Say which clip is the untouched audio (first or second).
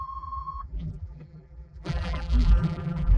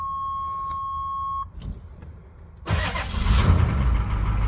second